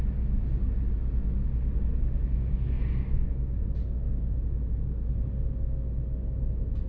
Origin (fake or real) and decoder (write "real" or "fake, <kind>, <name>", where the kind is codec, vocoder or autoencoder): real